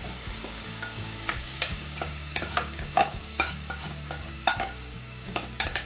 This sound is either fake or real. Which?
fake